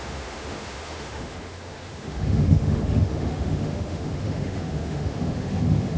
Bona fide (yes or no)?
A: no